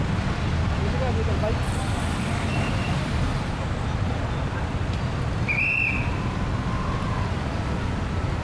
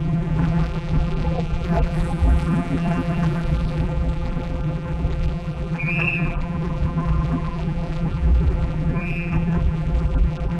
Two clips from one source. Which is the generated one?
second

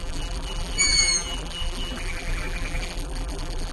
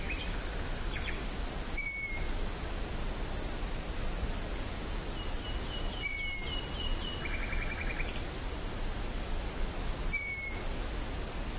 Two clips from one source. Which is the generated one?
first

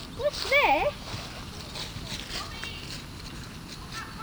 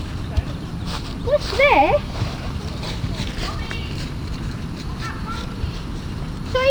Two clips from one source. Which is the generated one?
second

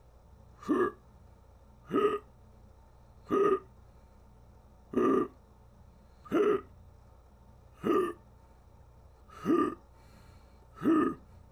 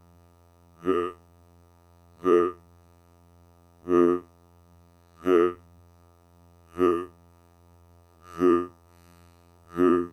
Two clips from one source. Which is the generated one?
second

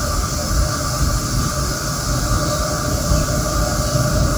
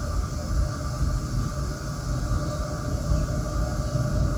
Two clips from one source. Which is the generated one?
first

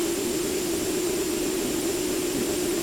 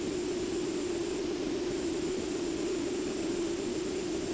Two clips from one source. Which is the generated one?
second